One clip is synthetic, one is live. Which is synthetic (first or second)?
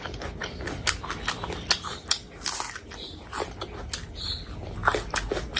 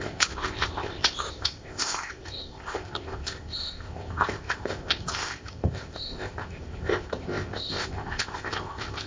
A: second